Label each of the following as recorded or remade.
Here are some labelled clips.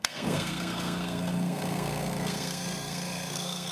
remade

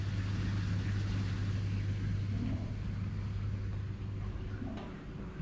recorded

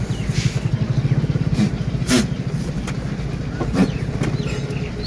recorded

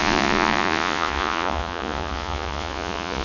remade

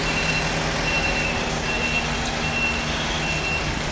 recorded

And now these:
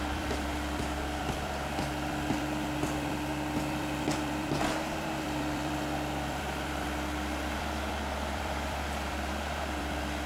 remade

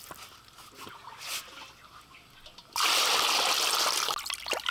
recorded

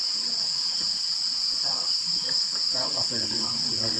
remade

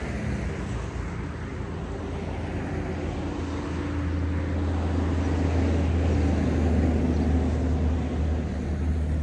recorded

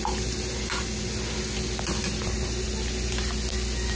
recorded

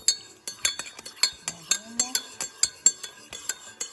recorded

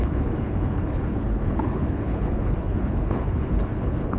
remade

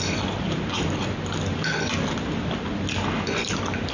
recorded